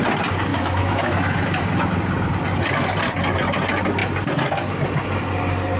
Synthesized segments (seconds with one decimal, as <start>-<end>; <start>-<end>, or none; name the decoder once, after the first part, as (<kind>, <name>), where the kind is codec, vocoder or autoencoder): 0.5-2.0 (autoencoder, DAC-VAE)

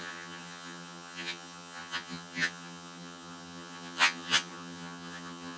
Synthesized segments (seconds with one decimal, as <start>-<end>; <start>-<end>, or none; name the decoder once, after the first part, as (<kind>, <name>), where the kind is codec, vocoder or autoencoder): 0.0-5.6 (vocoder, HiFi-GAN)